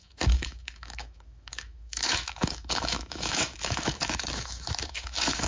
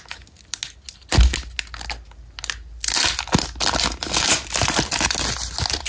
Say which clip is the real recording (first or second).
second